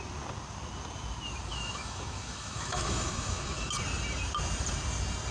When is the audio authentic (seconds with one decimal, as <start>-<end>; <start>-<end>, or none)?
0.0-1.5; 3.7-5.3